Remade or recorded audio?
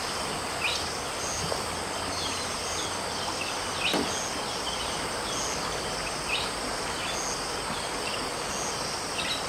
recorded